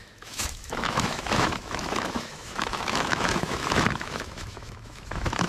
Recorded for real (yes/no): no